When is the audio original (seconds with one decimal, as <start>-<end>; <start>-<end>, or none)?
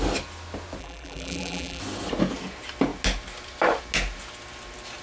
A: 0.0-0.8; 1.8-5.0